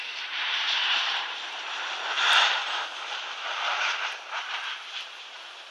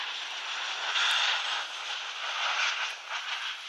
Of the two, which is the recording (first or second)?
second